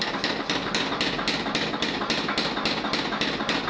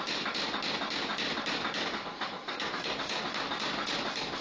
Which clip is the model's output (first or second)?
second